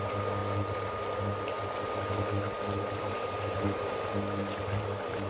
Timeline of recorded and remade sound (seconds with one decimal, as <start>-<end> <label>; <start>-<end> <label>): 0.0-3.0 recorded; 3.0-3.9 remade; 3.9-4.4 recorded; 4.4-5.3 remade

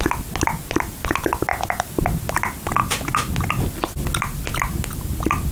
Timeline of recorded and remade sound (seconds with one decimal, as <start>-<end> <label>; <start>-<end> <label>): 0.0-5.5 recorded

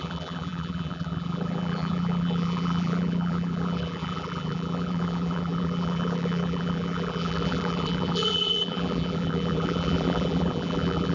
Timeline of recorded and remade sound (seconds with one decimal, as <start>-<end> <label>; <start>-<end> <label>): 0.0-11.1 remade

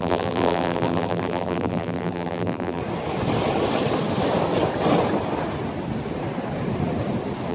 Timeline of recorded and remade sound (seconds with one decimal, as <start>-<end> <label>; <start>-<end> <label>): 0.0-2.8 remade; 2.8-7.5 recorded